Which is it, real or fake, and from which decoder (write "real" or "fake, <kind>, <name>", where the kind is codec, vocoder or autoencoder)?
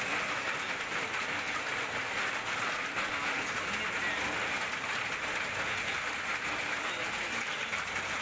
real